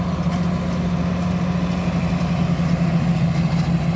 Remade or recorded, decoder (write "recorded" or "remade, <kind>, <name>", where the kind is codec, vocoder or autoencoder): recorded